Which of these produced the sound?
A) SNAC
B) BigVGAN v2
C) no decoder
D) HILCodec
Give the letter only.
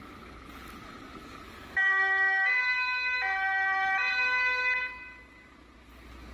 C